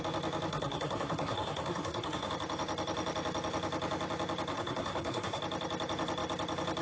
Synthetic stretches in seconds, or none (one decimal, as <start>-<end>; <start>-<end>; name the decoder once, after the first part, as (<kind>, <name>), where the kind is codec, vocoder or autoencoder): 0.5-2.3 (codec, SNAC); 4.5-5.4